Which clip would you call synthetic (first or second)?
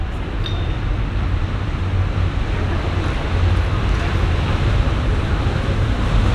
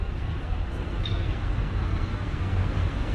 second